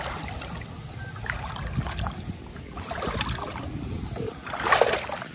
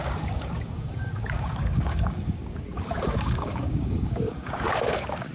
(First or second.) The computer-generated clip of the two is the second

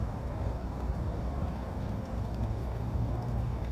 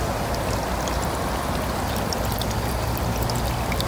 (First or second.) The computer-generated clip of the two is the first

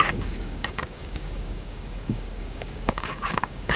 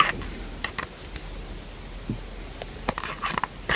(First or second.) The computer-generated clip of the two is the first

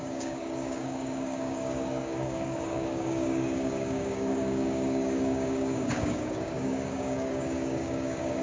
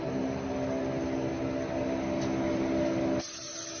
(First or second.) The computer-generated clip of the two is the first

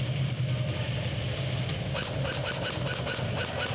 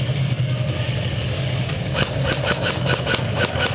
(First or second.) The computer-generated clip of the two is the second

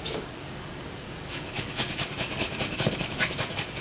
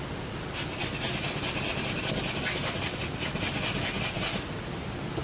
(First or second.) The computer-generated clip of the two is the first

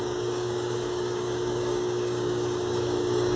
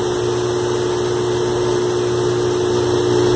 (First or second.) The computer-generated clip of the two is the first